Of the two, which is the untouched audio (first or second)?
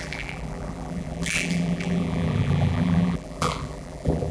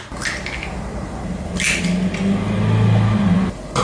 second